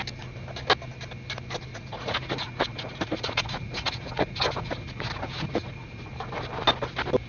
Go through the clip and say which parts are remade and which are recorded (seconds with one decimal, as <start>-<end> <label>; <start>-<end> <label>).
0.0-1.7 recorded; 1.7-6.1 remade; 6.1-7.3 recorded

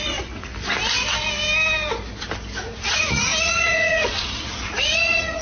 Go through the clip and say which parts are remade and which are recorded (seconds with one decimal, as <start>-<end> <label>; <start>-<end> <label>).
0.0-0.5 remade; 0.5-2.6 recorded; 2.6-5.4 remade